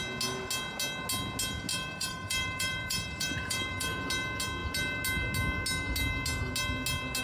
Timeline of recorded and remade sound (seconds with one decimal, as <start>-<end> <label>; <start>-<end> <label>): 0.0-1.7 recorded; 1.7-4.1 remade; 4.1-7.2 recorded